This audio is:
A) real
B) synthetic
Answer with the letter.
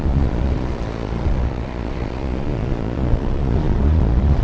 B